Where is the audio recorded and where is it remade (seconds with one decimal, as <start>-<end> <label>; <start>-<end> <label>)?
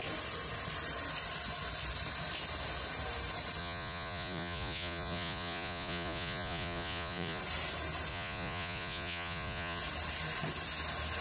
0.0-3.6 recorded; 3.6-7.4 remade; 7.4-8.1 recorded; 8.1-9.8 remade; 9.8-11.2 recorded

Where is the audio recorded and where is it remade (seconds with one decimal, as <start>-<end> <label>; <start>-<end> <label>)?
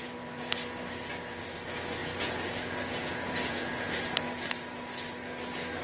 0.0-2.0 recorded; 2.0-4.0 remade; 4.0-5.8 recorded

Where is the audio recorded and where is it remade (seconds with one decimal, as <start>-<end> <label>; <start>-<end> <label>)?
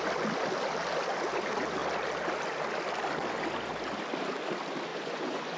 0.0-4.9 recorded; 4.9-5.6 remade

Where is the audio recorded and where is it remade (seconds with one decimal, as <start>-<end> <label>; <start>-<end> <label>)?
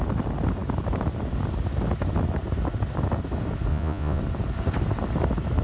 0.0-3.7 recorded; 3.7-4.2 remade; 4.2-5.6 recorded